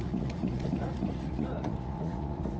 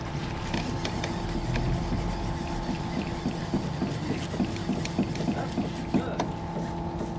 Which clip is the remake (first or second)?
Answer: first